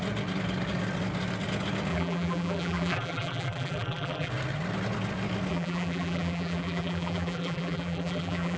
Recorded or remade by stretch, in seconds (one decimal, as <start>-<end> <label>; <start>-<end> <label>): 0.0-1.9 recorded; 1.9-4.3 remade; 4.3-5.5 recorded; 5.5-8.6 remade